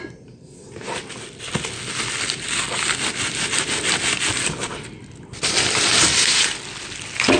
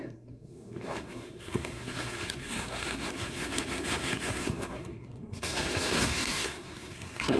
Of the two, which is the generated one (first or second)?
second